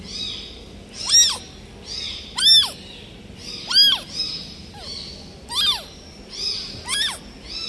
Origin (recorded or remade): recorded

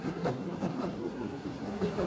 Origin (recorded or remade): remade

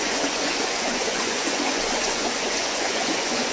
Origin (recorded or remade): remade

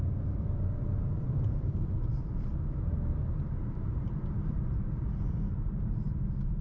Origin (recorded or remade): remade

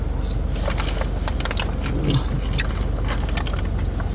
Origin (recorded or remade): recorded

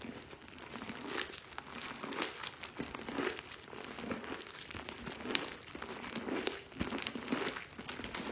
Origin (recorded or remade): recorded